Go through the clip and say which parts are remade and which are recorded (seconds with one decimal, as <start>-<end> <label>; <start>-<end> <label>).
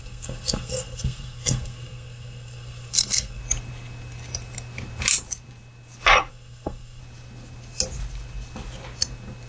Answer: 0.0-3.4 remade; 3.4-6.3 recorded; 6.3-7.0 remade; 7.0-9.5 recorded